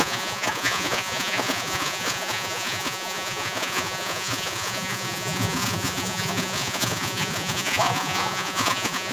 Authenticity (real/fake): fake